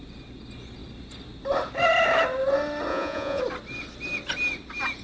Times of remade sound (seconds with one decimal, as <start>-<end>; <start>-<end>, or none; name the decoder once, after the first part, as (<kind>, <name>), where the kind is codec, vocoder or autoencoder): 2.9-3.4 (vocoder, Vocos)